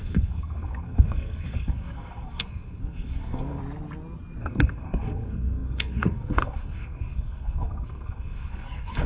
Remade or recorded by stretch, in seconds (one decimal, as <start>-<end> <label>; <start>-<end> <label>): 0.0-3.6 remade; 3.6-4.4 recorded; 4.4-9.1 remade